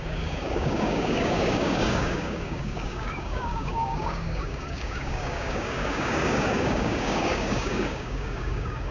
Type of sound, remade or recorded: remade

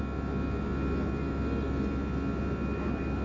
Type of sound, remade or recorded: recorded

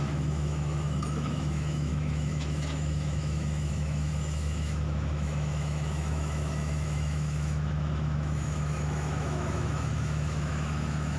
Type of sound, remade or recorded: remade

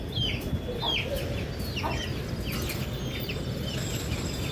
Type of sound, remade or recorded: recorded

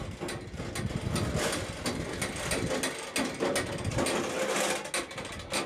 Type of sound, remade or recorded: recorded